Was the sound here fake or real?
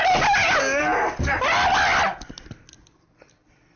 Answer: real